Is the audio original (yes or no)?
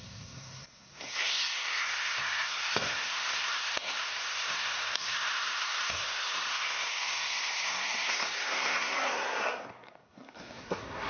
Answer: no